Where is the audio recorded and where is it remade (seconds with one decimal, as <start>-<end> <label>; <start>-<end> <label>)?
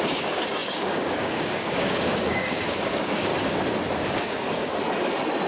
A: 0.0-3.3 remade; 3.3-4.0 recorded; 4.0-4.7 remade; 4.7-5.5 recorded